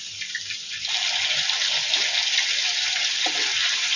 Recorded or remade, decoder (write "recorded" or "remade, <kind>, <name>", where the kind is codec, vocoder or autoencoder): recorded